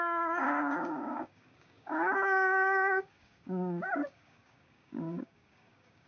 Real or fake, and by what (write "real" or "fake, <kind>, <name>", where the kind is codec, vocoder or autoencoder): fake, codec, DAC